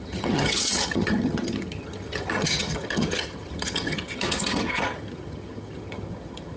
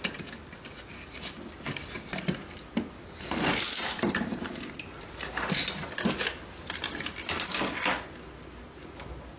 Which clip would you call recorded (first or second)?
second